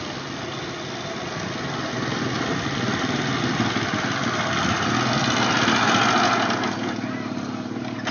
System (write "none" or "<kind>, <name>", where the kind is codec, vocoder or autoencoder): none